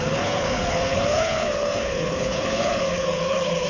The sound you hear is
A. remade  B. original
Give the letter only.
A